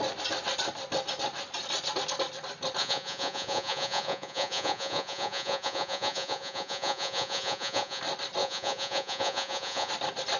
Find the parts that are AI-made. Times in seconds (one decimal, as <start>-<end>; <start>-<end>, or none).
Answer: 2.8-8.0; 8.4-9.9